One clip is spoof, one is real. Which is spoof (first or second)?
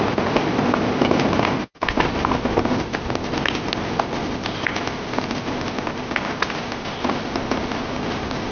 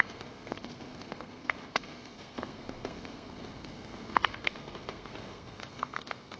second